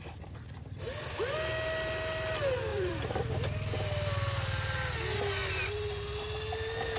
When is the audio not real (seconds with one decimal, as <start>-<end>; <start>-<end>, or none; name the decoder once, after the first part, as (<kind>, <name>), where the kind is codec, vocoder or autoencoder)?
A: 2.7-3.3 (vocoder, BigVGAN v2)

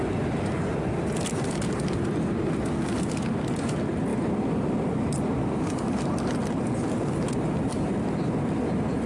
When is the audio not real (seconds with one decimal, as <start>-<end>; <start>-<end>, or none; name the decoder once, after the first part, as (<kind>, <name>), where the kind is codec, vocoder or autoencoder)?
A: 4.1-5.3 (vocoder, BigVGAN v2)

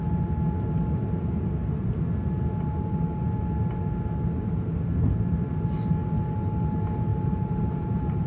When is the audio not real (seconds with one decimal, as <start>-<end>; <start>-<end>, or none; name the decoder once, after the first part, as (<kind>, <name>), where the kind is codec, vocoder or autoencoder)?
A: 7.1-8.3 (vocoder, BigVGAN v2)

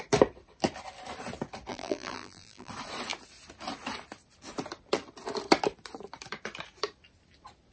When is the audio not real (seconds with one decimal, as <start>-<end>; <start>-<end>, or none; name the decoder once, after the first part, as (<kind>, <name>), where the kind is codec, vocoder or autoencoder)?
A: 1.7-2.7 (vocoder, BigVGAN v2)